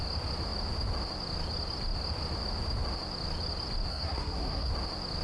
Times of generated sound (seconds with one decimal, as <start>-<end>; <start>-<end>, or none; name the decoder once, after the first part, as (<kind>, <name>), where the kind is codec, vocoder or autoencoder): 3.9-4.7 (codec, SNAC)